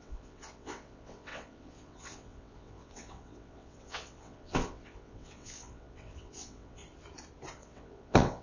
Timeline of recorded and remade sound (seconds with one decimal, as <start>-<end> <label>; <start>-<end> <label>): 0.0-6.8 remade; 6.8-7.5 recorded; 7.5-8.4 remade